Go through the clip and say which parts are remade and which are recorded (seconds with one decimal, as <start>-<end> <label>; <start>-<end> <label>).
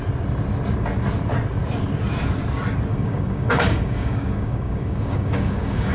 0.0-2.9 recorded; 2.9-5.9 remade